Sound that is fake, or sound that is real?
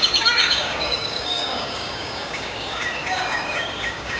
fake